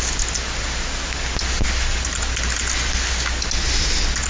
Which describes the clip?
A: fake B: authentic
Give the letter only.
B